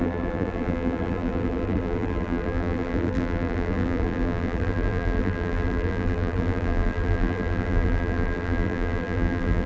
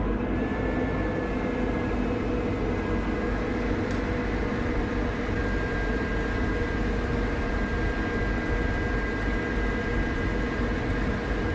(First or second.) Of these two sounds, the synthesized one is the first